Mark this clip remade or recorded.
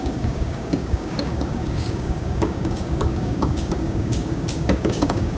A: remade